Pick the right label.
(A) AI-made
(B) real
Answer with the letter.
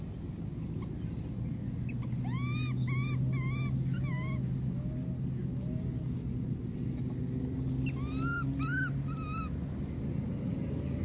B